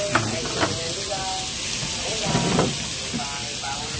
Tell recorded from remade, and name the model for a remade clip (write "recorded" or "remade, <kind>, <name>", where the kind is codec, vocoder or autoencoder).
recorded